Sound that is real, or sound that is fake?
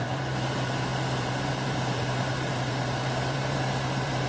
fake